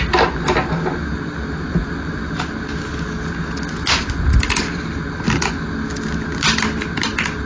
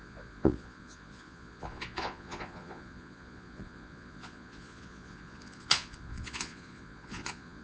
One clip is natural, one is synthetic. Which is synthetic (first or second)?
second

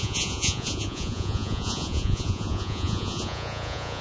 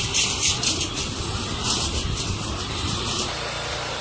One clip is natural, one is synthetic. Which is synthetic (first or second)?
first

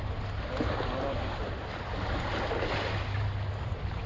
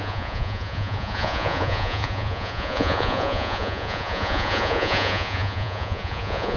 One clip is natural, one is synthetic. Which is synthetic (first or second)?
second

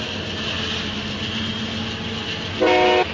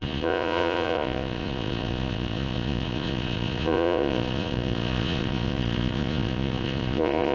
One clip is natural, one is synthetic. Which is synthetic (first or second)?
second